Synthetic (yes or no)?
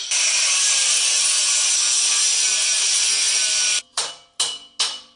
no